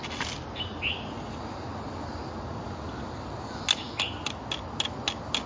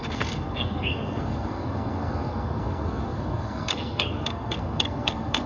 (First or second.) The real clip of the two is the first